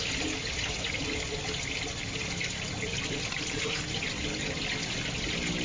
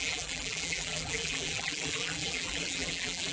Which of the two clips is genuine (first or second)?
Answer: first